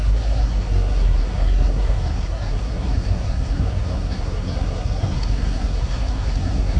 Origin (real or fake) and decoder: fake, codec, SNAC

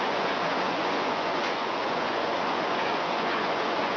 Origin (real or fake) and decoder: fake, vocoder, Vocos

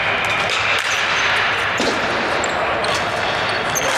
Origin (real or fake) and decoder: real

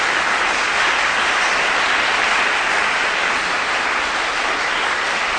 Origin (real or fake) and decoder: real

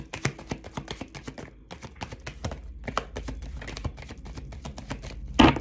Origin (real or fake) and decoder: real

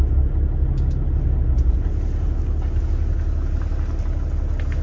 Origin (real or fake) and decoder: real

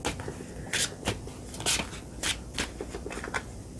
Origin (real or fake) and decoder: real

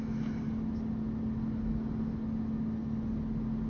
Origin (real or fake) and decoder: real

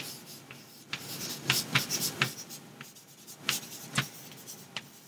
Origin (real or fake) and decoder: real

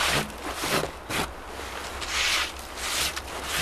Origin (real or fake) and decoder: real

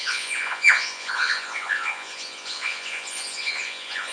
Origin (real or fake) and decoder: fake, vocoder, Vocos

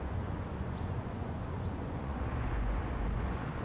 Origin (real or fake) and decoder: fake, vocoder, Vocos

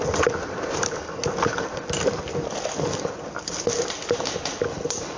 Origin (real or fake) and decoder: real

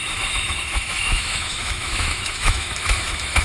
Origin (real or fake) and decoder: fake, autoencoder, DAC-VAE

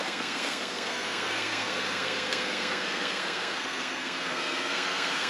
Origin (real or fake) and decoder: fake, codec, SNAC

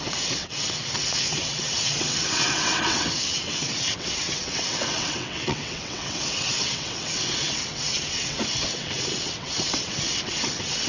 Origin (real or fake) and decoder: fake, vocoder, WaveNeXt